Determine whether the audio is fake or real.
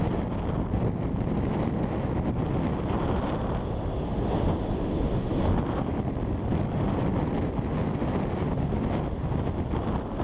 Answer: real